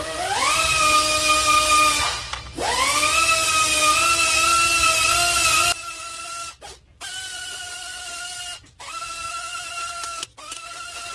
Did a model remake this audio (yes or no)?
no